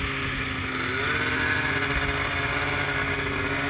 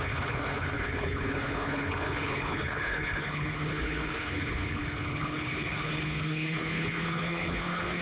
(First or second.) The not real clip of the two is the second